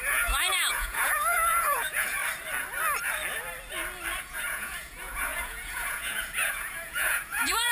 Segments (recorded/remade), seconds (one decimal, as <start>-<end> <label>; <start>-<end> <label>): 0.0-2.2 remade; 2.2-4.2 recorded; 4.2-7.7 remade